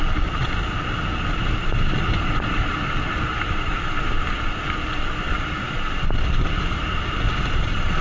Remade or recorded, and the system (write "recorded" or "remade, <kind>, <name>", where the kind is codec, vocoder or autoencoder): recorded